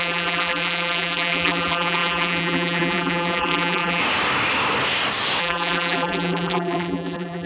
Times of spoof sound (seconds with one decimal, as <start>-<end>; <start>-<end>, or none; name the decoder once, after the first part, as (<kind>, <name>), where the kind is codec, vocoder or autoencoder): 0.0-4.0 (vocoder, BigVGAN v2); 5.4-7.5